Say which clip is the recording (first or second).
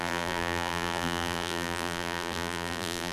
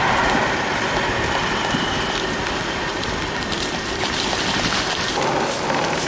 second